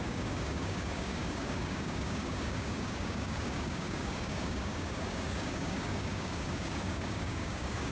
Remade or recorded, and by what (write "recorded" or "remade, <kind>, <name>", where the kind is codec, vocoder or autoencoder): remade, codec, DAC